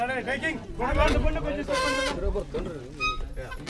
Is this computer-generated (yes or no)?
no